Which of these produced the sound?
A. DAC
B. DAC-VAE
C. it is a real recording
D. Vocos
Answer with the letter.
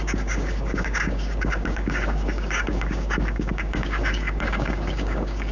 A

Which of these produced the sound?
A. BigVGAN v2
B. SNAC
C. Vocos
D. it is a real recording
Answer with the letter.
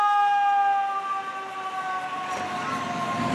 D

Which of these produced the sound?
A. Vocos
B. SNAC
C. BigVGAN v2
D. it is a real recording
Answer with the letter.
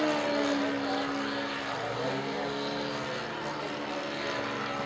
D